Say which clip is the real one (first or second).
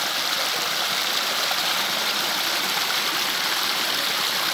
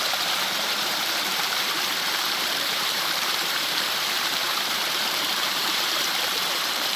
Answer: first